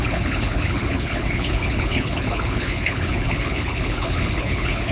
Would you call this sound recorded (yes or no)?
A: no